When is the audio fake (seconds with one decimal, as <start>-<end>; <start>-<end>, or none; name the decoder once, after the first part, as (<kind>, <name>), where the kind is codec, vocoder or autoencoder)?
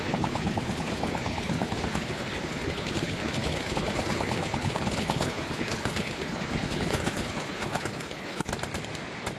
0.0-8.5 (codec, HILCodec)